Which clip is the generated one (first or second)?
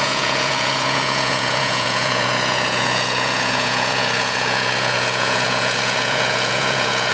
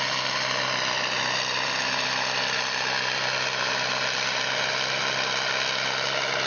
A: first